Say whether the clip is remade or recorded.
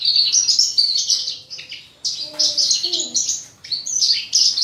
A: recorded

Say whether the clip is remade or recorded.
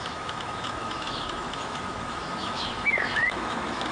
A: remade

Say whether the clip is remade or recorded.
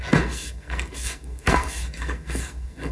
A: remade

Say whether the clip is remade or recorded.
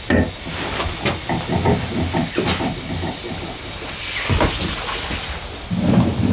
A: recorded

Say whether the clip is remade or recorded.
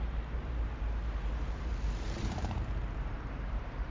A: remade